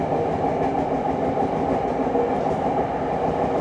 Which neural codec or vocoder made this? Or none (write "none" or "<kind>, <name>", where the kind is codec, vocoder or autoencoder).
none